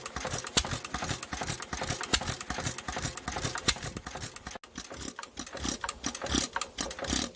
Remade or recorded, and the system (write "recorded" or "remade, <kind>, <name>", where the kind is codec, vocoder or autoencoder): recorded